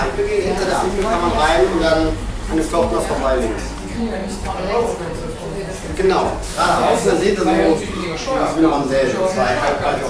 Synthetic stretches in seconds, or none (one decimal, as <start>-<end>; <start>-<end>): 0.6-1.9; 6.4-7.8